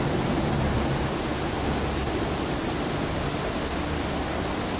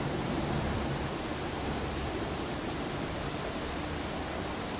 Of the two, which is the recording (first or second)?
first